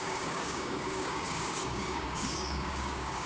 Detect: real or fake fake